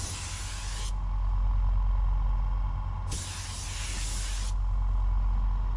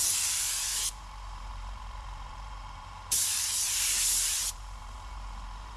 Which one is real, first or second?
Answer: first